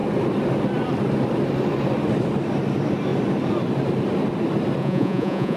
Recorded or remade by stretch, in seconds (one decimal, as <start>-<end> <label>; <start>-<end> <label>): 0.0-4.8 recorded; 4.8-5.6 remade